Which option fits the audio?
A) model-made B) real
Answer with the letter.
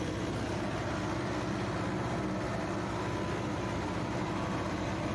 B